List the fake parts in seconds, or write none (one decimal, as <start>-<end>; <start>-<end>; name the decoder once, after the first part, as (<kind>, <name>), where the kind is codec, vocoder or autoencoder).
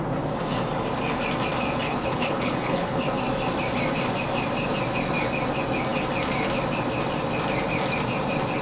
1.9-3.0 (codec, HILCodec)